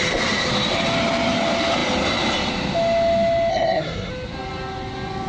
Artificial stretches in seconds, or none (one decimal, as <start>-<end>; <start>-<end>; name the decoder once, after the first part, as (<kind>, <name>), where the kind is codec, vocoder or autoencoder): 3.5-4.1 (codec, SNAC)